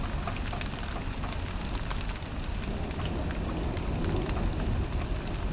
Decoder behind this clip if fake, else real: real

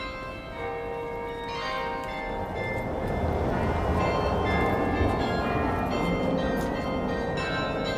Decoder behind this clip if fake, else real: real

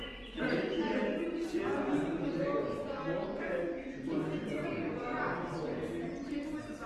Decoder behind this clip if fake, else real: real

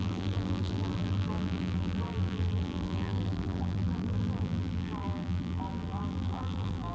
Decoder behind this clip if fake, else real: fake, vocoder, BigVGAN v2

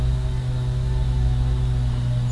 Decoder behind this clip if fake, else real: real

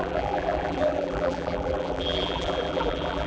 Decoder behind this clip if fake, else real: fake, vocoder, BigVGAN v2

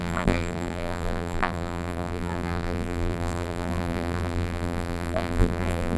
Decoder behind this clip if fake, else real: fake, vocoder, BigVGAN v2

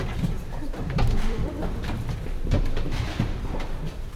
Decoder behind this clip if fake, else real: fake, vocoder, BigVGAN v2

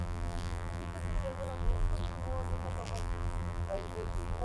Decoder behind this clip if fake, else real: fake, vocoder, BigVGAN v2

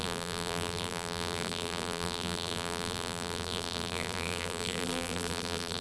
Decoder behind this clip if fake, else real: fake, vocoder, BigVGAN v2